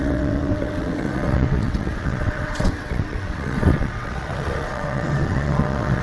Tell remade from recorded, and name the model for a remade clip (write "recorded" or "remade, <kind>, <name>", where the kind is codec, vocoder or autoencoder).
remade, vocoder, WaveNeXt